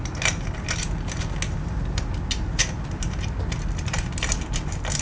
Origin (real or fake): real